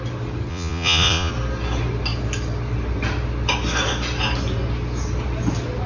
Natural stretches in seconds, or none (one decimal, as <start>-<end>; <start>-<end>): 0.0-0.5; 1.3-5.9